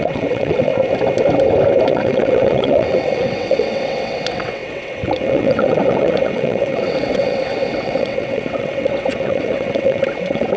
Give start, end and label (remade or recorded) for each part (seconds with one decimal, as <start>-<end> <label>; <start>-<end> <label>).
0.0-0.7 remade; 0.7-1.9 recorded; 1.9-10.6 remade